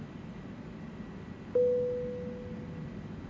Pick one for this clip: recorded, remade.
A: recorded